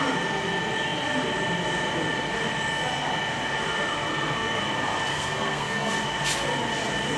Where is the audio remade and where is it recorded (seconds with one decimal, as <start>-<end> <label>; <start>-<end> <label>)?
0.0-4.1 recorded; 4.1-4.6 remade; 4.6-5.1 recorded; 5.1-6.0 remade; 6.0-7.2 recorded